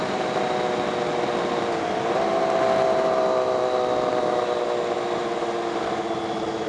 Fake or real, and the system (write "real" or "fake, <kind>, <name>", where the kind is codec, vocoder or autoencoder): real